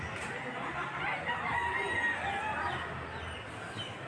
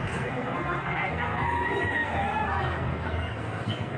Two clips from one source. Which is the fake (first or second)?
second